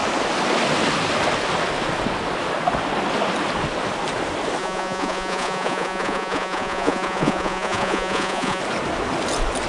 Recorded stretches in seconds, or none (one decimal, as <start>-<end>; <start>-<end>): 0.0-4.6; 8.6-9.7

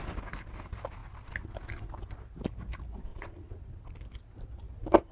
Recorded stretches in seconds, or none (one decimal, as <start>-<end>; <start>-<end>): 0.0-3.1; 3.8-5.1